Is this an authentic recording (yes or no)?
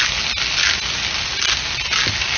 yes